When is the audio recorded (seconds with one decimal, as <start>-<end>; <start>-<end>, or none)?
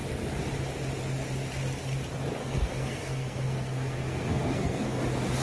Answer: 0.0-2.4; 5.0-5.4